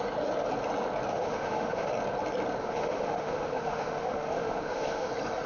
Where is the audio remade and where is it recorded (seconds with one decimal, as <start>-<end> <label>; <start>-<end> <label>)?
0.0-1.1 recorded; 1.1-1.9 remade; 1.9-2.6 recorded; 2.6-5.1 remade; 5.1-5.5 recorded